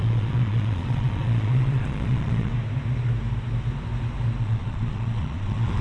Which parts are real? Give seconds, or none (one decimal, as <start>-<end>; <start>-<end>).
2.5-4.4